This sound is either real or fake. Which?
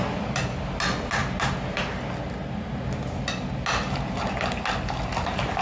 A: real